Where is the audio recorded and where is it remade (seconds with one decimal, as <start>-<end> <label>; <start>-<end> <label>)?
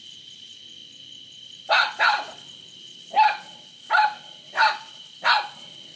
0.0-6.0 recorded